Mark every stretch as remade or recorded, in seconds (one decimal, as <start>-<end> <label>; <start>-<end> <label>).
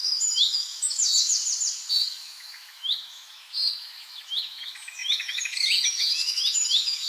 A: 0.0-1.4 remade; 1.4-1.9 recorded; 1.9-7.1 remade